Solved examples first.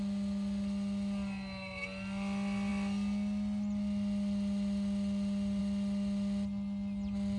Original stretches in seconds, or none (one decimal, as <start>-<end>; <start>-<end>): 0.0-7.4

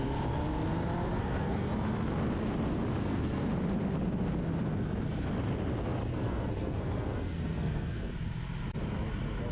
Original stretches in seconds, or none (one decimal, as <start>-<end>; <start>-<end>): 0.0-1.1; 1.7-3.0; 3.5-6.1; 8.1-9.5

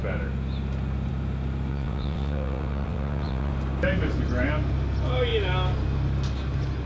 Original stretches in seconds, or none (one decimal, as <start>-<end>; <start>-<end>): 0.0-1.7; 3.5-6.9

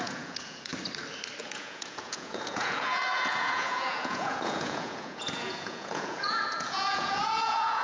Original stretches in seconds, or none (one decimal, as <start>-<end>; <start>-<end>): 0.7-1.4